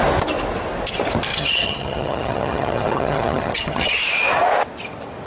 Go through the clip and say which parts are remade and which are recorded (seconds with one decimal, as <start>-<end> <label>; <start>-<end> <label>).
0.0-1.3 recorded; 1.3-4.0 remade; 4.0-5.3 recorded